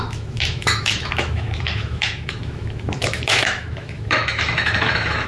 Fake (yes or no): yes